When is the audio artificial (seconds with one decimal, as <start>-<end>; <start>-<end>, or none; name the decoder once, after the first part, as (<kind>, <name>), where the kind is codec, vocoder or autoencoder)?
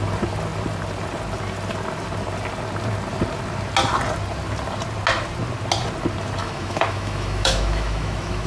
6.4-8.5 (autoencoder, DAC-VAE)